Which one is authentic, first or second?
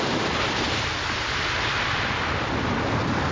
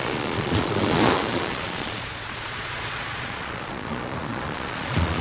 first